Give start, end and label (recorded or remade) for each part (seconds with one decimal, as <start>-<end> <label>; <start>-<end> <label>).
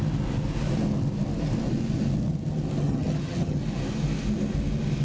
0.0-2.8 recorded; 2.8-3.6 remade; 3.6-5.0 recorded